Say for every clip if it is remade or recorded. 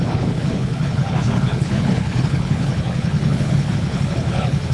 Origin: remade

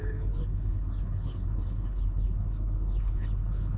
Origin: remade